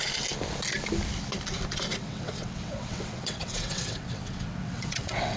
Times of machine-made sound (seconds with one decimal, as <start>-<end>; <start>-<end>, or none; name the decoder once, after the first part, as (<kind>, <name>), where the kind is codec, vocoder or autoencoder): 1.9-5.4 (vocoder, WaveNeXt)